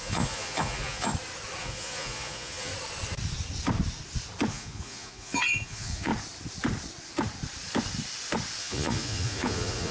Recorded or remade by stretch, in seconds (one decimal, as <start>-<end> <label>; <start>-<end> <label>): 0.0-1.1 remade; 1.1-1.6 recorded; 1.6-2.7 remade; 2.7-4.5 recorded; 4.5-6.1 remade; 6.1-8.6 recorded; 8.6-9.9 remade